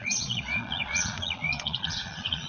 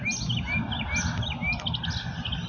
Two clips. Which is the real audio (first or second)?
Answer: second